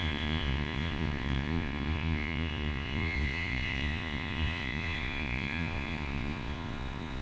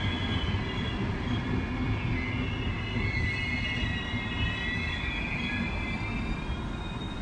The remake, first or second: first